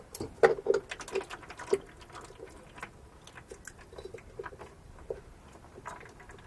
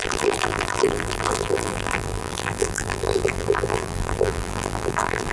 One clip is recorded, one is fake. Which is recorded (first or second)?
first